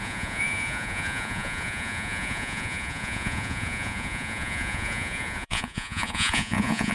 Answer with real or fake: fake